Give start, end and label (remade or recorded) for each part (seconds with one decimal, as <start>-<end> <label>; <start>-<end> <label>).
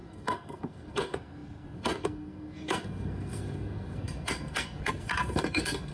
0.0-5.9 remade